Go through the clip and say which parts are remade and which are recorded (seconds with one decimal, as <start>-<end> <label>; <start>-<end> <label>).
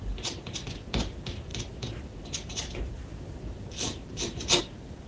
0.0-5.1 recorded